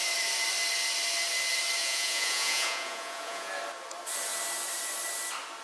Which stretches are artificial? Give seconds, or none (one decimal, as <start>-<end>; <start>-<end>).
1.8-3.5